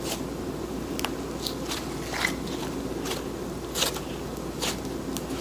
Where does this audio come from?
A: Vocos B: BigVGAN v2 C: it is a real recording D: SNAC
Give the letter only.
C